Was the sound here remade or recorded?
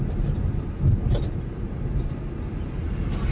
recorded